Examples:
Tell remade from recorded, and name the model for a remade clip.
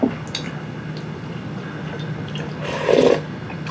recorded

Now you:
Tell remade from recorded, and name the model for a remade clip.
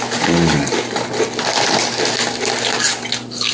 recorded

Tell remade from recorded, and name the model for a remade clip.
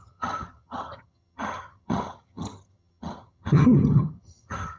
remade, vocoder, HiFi-GAN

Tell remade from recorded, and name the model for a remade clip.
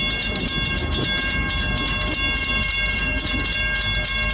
recorded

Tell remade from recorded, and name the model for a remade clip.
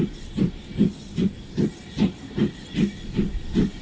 recorded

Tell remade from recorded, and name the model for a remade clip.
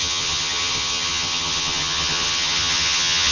remade, vocoder, HiFi-GAN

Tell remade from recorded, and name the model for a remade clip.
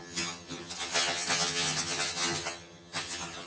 remade, vocoder, HiFi-GAN